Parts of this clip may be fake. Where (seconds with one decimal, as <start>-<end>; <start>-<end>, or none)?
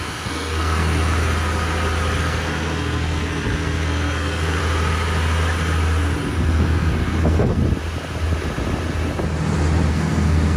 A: 0.0-1.0; 2.2-4.6; 6.3-7.6; 9.9-10.6